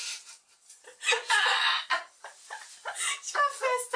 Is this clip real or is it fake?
real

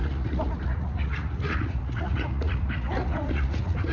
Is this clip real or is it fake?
fake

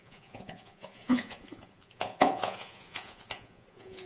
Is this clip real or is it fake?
fake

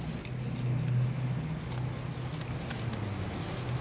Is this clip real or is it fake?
real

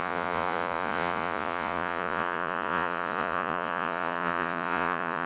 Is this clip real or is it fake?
fake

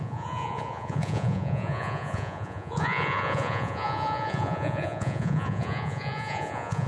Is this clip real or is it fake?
fake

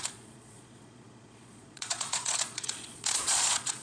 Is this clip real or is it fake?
fake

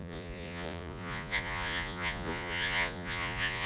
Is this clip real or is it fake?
fake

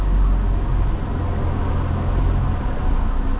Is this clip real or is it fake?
real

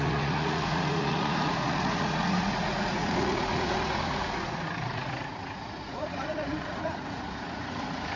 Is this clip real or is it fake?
fake